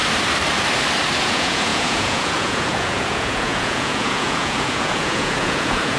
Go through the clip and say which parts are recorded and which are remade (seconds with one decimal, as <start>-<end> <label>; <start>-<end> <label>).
0.0-1.2 recorded; 1.2-6.0 remade